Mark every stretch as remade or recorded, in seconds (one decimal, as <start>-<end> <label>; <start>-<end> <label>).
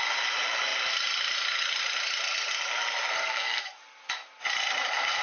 0.0-3.2 recorded; 3.2-3.8 remade; 3.8-5.2 recorded